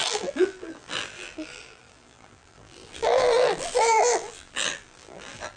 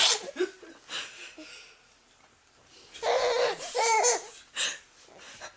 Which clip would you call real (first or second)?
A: second